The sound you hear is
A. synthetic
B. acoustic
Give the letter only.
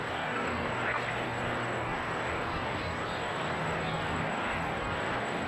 A